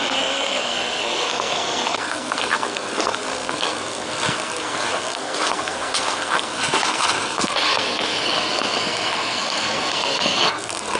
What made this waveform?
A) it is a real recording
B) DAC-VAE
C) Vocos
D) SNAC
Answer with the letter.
D